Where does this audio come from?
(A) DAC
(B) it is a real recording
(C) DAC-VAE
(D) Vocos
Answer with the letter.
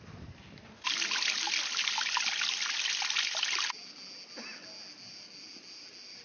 B